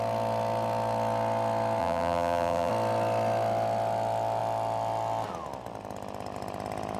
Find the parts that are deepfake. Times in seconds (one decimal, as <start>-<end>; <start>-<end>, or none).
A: 1.8-2.7